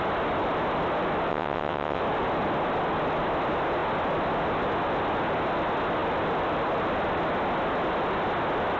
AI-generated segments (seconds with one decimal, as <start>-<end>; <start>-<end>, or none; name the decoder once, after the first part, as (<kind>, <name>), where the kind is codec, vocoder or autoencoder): 1.3-2.0 (vocoder, WaveNeXt)